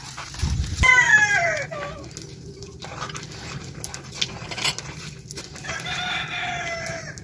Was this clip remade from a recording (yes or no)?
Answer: no